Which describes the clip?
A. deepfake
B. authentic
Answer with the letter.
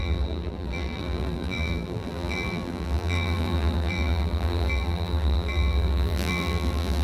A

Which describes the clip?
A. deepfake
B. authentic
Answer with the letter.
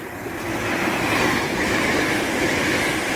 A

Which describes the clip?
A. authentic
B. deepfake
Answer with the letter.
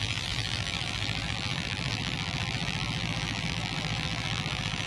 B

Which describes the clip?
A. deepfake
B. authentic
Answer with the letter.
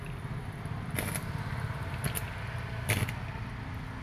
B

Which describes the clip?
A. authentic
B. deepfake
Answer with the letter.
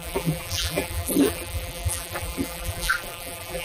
B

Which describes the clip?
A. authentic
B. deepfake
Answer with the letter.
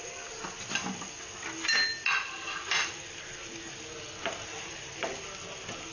A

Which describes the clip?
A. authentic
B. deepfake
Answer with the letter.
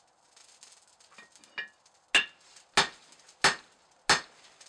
A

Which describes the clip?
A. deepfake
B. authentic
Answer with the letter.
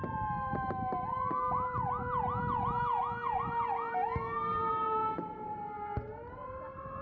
A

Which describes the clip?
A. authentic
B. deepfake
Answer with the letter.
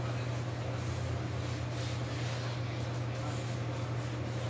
A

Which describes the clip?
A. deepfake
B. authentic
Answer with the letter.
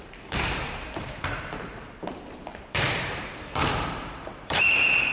A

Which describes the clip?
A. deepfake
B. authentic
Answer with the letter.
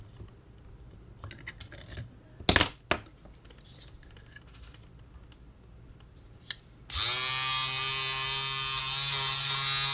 B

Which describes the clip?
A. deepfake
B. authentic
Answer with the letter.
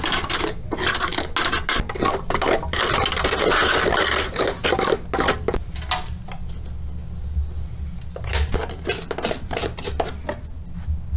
B